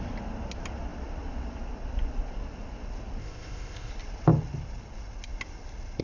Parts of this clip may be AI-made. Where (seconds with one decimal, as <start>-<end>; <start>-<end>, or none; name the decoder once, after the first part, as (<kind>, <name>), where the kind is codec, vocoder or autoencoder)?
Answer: 3.2-3.9 (codec, ZipCodec)